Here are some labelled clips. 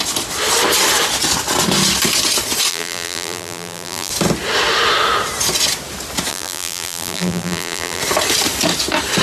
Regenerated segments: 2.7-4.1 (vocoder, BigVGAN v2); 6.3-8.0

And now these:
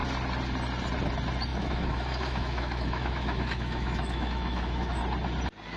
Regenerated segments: 1.5-5.0 (autoencoder, DAC-VAE)

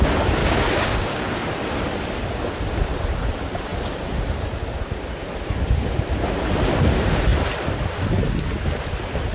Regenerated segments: 0.4-1.5 (codec, DAC)

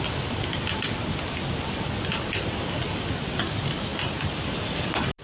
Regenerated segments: none

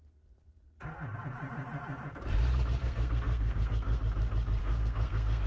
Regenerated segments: 2.8-4.0 (codec, SNAC); 4.6-5.5

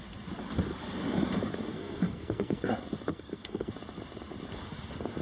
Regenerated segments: 1.7-2.7 (codec, SNAC); 3.1-3.7

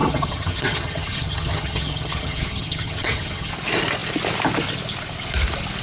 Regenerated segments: 0.0-3.5 (vocoder, HiFi-GAN)